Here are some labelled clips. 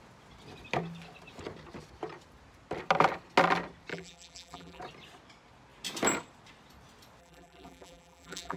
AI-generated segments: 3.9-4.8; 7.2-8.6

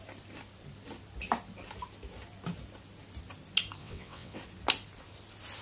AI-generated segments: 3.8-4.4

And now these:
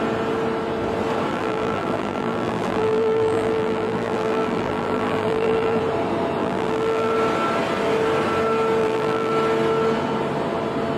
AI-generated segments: 1.3-5.8; 6.4-7.1; 8.8-9.3

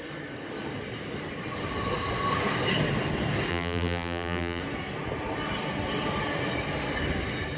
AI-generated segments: 3.5-4.6